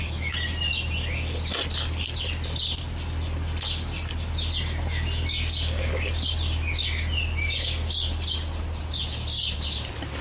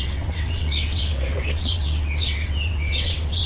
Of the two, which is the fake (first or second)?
second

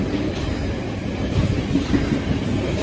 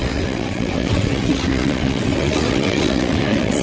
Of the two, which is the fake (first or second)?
second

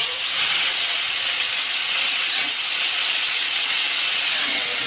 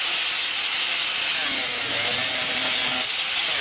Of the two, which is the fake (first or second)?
first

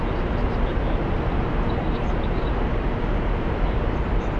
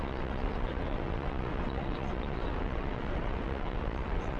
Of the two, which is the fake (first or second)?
second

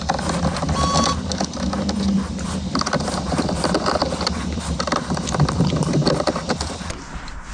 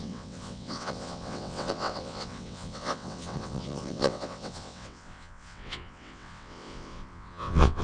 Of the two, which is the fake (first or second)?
second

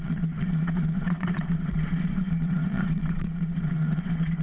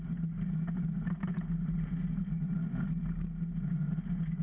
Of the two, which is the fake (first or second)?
first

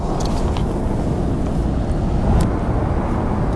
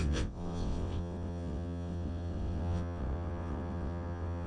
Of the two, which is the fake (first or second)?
second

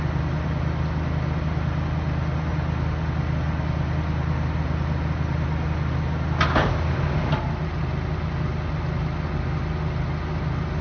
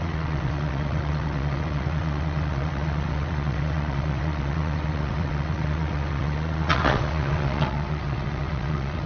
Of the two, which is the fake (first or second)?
second